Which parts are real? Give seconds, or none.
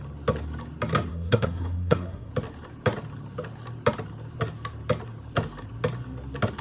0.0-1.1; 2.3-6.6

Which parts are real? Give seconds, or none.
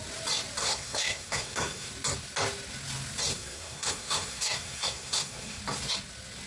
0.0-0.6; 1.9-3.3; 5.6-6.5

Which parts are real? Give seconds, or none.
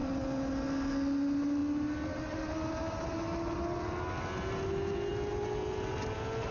0.0-6.5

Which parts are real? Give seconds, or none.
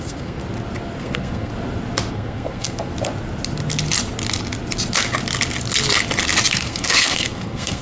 0.4-1.0; 1.5-2.1; 2.9-6.5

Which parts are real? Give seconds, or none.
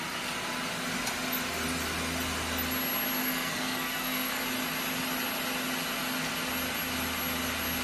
0.0-3.2; 4.4-7.8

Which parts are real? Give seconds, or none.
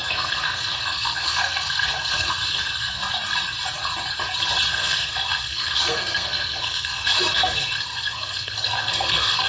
3.0-4.7